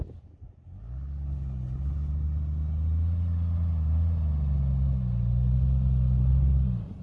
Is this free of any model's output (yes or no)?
yes